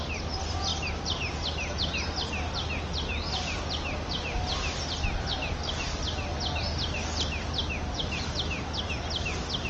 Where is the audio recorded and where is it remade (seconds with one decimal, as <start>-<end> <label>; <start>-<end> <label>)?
0.0-9.7 recorded